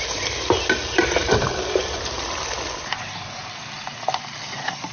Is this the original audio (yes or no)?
no